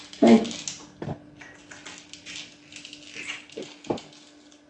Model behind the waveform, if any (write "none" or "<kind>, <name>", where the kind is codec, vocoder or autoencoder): none